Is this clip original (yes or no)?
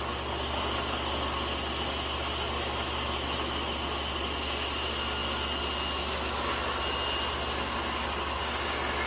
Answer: yes